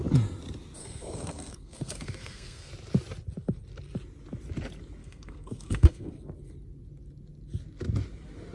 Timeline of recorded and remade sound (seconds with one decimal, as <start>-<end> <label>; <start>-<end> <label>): 0.0-0.8 recorded; 0.8-2.7 remade; 2.7-5.0 recorded; 5.0-6.1 remade; 6.1-8.5 recorded